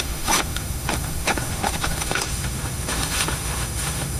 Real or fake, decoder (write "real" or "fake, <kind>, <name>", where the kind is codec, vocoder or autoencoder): fake, autoencoder, DAC-VAE